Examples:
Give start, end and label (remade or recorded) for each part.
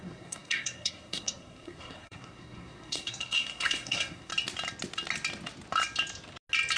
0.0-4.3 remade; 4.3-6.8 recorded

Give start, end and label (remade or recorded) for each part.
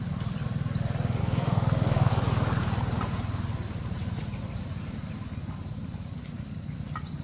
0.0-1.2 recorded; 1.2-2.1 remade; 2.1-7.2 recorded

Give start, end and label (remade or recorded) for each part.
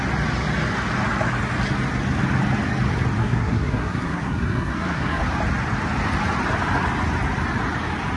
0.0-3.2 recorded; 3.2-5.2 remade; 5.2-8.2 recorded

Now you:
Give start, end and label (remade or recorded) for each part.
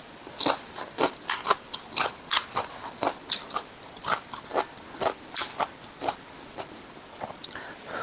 0.0-8.0 recorded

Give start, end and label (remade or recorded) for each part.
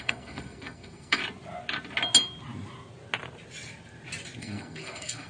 0.0-1.2 remade; 1.2-4.4 recorded; 4.4-5.3 remade